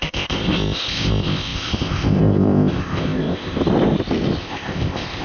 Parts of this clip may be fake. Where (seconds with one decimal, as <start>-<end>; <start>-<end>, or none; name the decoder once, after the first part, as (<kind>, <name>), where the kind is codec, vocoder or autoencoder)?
0.0-3.6 (codec, ZipCodec); 4.4-5.2